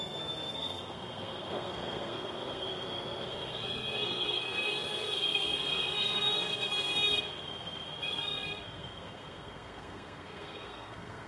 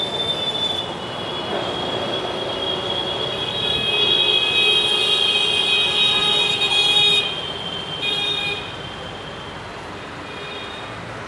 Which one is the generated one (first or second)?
first